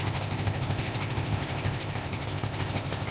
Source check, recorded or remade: remade